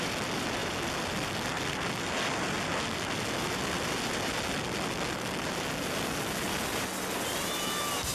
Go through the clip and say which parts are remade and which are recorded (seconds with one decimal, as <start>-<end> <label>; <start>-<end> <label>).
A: 0.0-8.1 recorded